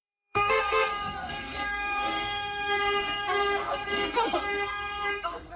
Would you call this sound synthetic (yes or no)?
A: yes